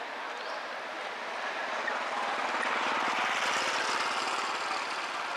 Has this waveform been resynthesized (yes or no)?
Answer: no